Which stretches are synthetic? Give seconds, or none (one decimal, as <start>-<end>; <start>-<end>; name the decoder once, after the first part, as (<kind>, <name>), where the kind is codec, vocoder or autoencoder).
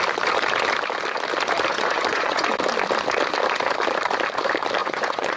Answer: 1.7-2.5 (vocoder, Vocos); 4.8-5.4